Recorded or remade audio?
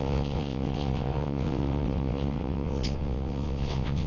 remade